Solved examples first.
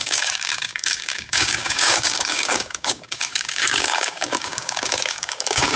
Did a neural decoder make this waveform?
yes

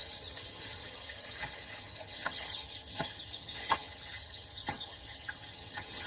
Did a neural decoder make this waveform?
yes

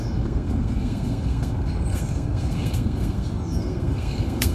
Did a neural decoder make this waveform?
yes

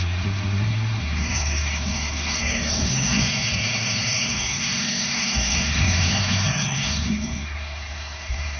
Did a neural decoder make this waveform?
yes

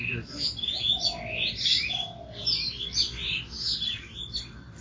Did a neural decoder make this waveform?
no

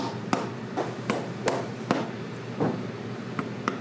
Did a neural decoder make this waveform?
no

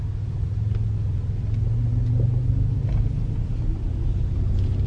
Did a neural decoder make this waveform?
no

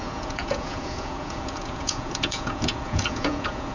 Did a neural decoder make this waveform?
yes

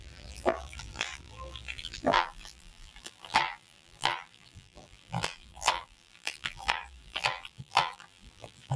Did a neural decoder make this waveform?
yes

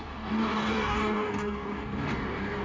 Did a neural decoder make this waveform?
yes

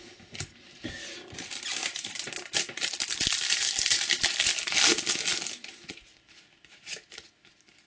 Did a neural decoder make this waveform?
no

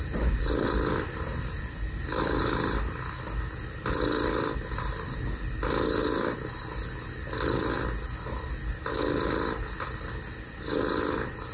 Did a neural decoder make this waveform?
no